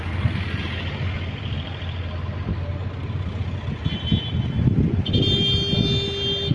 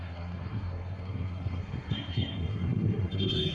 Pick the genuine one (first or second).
first